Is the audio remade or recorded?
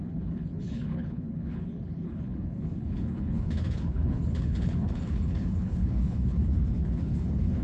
remade